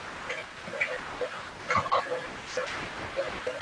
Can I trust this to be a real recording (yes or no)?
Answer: yes